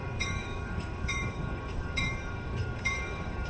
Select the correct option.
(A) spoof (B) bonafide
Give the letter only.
A